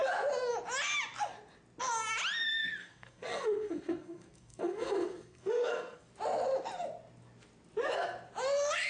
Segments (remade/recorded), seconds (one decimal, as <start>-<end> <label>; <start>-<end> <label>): 0.0-2.8 recorded; 2.8-6.1 remade; 6.1-8.9 recorded